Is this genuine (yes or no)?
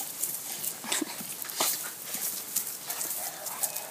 yes